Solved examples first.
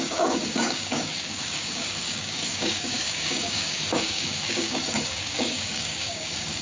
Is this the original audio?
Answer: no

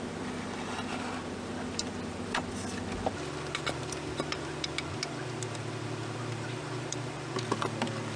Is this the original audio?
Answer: no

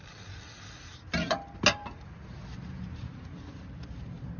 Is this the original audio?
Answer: yes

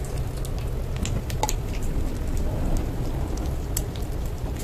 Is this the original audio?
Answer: yes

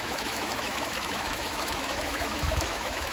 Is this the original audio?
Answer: no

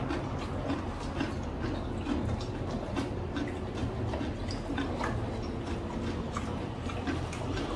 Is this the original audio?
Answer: yes